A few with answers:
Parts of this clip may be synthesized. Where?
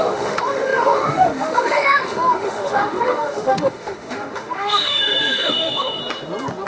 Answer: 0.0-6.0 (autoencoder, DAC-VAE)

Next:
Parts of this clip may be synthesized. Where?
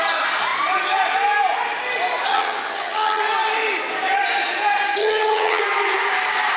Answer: 2.3-3.2 (vocoder, HiFi-GAN); 5.0-5.6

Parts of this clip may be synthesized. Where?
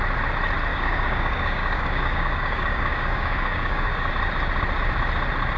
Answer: 0.7-4.1 (codec, DAC)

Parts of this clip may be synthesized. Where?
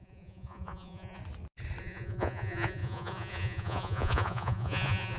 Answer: 0.0-1.2 (vocoder, Vocos); 1.8-5.2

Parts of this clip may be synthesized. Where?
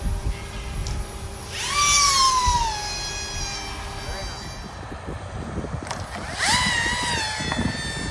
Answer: none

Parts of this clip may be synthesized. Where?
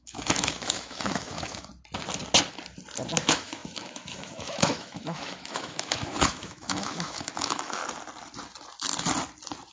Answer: 0.0-1.7 (autoencoder, DAC-VAE); 3.2-7.8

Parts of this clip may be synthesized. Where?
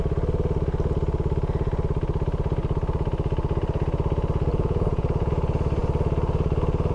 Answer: 4.5-5.3 (vocoder, Vocos)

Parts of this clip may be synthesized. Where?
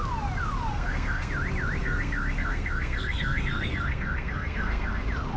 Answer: 0.7-1.3 (codec, SNAC); 1.8-5.0